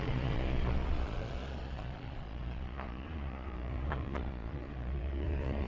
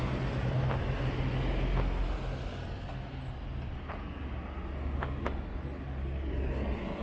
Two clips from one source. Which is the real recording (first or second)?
second